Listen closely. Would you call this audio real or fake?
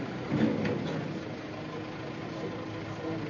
real